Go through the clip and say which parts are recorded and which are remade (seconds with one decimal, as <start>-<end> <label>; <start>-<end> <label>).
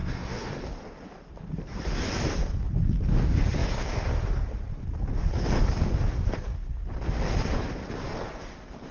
0.0-0.5 remade; 0.5-8.9 recorded